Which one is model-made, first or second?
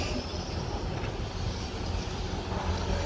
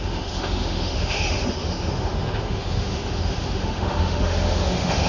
second